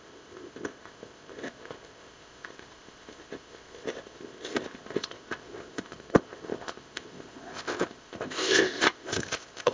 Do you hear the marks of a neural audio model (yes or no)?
yes